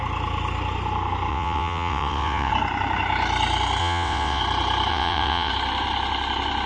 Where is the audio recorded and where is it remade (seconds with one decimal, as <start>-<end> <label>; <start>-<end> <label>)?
0.0-1.3 recorded; 1.3-2.5 remade; 2.5-3.8 recorded; 3.8-4.4 remade; 4.4-4.9 recorded; 4.9-5.5 remade; 5.5-6.7 recorded